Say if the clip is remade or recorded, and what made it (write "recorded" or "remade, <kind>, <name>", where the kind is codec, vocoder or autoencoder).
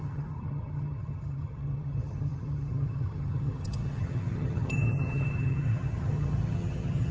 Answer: remade, vocoder, HiFi-GAN